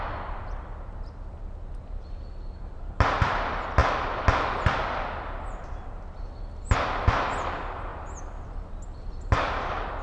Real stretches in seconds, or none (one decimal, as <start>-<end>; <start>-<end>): 0.0-10.0